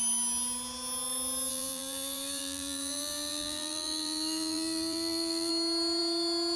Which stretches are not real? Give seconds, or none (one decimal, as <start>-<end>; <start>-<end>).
1.5-5.5